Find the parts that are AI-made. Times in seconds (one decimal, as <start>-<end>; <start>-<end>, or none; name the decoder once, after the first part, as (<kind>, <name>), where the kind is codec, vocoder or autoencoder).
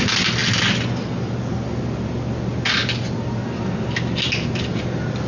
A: none